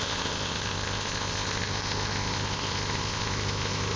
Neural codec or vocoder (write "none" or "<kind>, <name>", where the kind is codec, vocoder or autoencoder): codec, ZipCodec